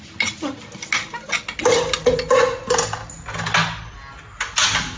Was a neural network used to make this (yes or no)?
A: no